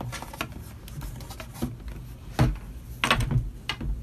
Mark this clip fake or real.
real